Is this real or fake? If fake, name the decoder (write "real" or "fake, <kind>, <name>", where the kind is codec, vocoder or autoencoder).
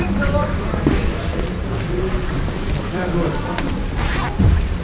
fake, vocoder, BigVGAN v2